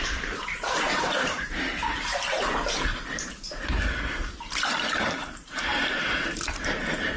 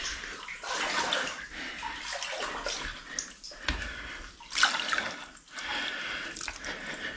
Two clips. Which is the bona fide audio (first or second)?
second